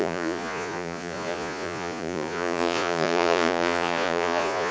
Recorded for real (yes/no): no